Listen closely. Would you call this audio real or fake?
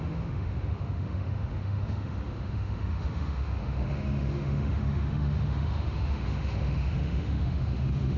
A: fake